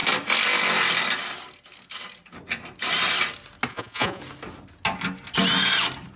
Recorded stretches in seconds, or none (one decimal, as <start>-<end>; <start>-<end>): 0.0-3.7; 4.2-6.2